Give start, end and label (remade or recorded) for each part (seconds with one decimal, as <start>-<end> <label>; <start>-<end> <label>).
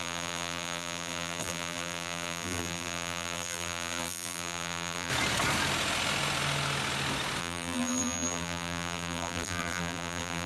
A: 0.0-5.1 remade; 5.1-7.4 recorded; 7.4-10.5 remade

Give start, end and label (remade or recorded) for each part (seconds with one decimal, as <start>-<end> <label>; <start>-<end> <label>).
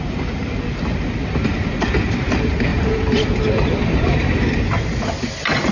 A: 0.0-2.7 recorded; 2.7-4.6 remade; 4.6-5.7 recorded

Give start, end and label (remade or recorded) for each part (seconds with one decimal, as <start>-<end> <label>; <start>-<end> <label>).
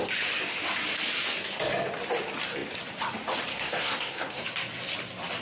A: 0.0-3.5 recorded; 3.5-4.4 remade; 4.4-5.4 recorded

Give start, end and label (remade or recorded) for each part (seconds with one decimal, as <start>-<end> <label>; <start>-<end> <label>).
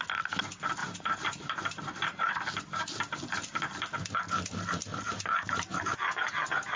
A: 0.0-0.8 recorded; 0.8-2.3 remade; 2.3-4.9 recorded; 4.9-5.7 remade; 5.7-6.8 recorded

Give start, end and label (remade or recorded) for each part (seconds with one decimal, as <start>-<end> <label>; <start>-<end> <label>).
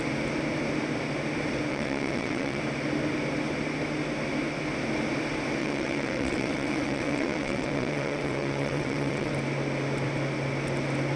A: 0.0-1.7 recorded; 1.7-2.6 remade; 2.6-5.6 recorded; 5.6-9.3 remade; 9.3-11.2 recorded